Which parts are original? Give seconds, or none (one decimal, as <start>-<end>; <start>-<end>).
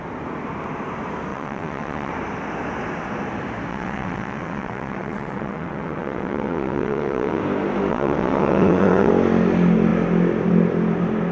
0.0-1.3; 2.1-3.7; 7.4-7.9; 9.1-11.3